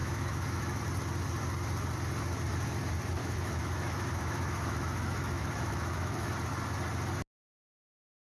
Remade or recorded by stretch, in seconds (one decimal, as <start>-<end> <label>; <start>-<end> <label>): 0.0-0.8 remade; 0.8-3.2 recorded; 3.2-6.3 remade; 6.3-8.3 recorded